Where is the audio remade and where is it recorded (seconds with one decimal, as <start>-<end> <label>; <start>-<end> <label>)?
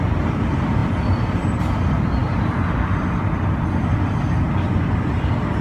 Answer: 0.0-5.6 recorded